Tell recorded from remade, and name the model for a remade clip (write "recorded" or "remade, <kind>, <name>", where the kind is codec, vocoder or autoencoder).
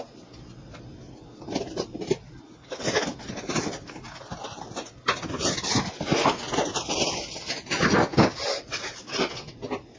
recorded